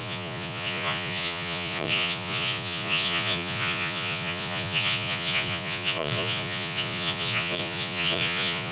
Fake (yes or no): yes